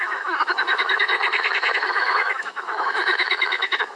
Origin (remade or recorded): remade